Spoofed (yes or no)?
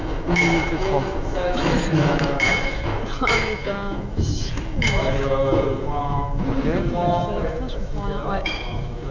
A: yes